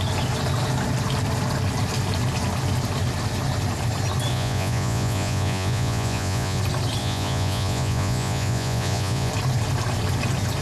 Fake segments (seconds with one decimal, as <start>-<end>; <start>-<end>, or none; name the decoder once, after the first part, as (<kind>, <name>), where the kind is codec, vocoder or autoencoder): 4.3-6.6 (vocoder, Vocos); 7.0-9.3